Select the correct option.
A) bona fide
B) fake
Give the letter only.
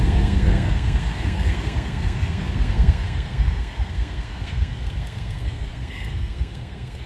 B